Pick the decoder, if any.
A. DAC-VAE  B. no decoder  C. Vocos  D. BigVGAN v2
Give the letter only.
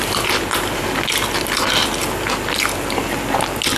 B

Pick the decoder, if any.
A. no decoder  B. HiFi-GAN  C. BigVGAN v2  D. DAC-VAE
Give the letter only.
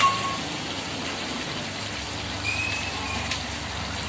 A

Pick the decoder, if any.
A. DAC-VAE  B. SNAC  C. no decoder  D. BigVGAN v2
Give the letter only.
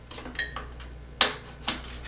C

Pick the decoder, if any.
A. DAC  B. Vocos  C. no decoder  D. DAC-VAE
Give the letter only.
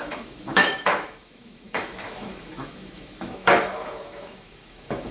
D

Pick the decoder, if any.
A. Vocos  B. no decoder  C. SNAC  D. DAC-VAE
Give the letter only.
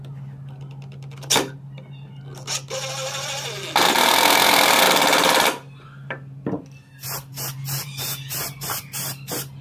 B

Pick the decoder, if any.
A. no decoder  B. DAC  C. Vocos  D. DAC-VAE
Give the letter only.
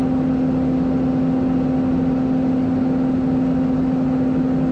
A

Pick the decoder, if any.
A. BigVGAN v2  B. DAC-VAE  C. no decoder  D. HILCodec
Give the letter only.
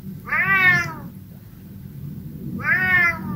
C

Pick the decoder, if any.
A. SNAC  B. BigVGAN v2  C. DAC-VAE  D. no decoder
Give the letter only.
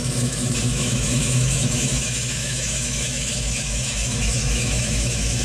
C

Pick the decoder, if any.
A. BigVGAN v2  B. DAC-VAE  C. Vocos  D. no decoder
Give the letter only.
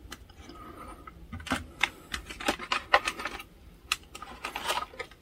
D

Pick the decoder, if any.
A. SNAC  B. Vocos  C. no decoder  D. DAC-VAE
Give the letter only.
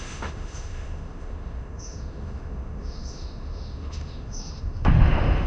D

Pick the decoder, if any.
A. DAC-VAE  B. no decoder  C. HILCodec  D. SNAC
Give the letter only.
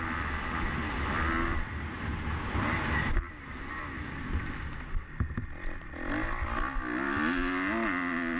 B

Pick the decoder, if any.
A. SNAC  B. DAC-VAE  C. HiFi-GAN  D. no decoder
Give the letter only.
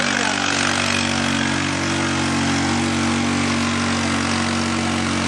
D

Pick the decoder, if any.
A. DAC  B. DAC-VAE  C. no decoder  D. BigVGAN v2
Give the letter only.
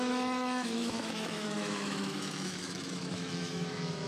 B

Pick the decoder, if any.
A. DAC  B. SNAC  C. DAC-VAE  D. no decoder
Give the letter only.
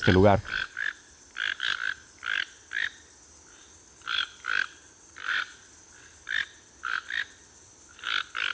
D